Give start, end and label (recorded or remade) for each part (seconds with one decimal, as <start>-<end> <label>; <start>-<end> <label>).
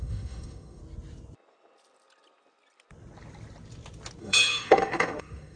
0.0-0.8 remade; 0.8-4.2 recorded; 4.2-5.6 remade